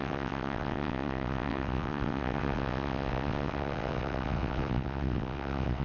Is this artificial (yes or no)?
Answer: yes